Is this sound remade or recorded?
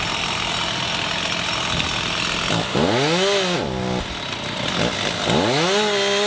recorded